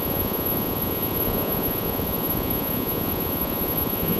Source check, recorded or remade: remade